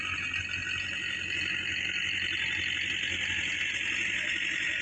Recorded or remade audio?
recorded